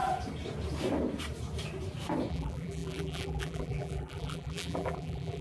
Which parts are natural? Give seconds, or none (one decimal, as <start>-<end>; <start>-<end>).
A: 0.0-2.3